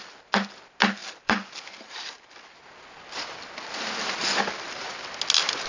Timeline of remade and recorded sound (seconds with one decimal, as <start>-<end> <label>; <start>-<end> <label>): 0.0-1.0 recorded; 1.0-2.4 remade; 2.4-4.2 recorded; 4.2-4.8 remade; 4.8-5.7 recorded